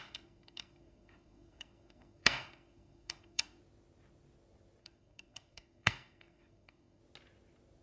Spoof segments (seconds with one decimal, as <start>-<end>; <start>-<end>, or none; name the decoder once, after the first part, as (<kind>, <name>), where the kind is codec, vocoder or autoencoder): 0.0-3.6 (codec, SNAC); 4.8-7.0